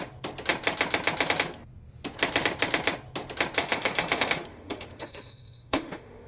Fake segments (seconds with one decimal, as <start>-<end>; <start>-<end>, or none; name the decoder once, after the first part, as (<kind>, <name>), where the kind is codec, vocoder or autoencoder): 3.6-6.3 (autoencoder, DAC-VAE)